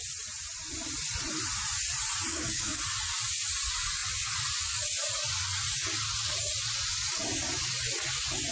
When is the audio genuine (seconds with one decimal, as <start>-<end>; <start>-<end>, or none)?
0.0-2.3; 2.8-8.5